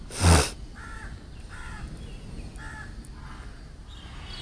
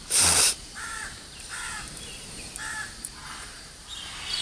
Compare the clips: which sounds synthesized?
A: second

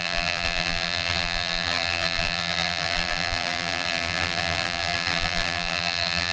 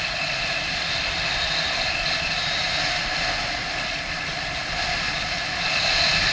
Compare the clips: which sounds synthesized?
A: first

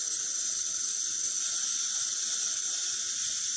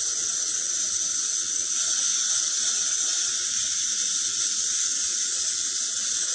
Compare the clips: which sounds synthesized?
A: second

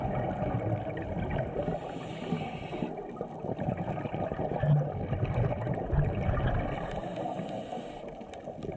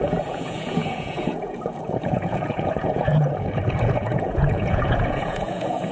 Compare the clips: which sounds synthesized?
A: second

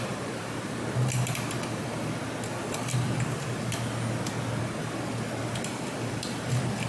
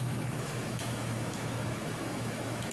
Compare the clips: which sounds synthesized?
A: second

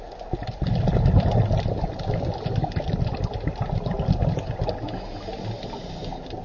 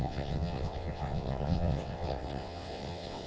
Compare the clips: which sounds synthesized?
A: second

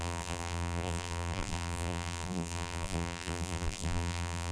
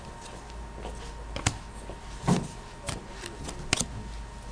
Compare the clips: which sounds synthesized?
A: first